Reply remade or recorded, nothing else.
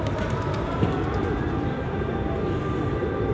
recorded